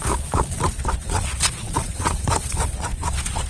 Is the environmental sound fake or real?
fake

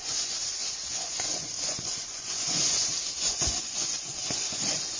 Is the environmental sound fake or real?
fake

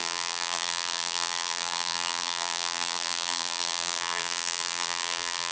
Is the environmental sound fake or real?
fake